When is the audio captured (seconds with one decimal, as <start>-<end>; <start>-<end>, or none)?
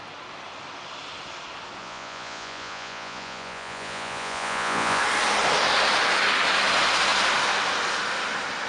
0.0-1.8; 5.0-8.7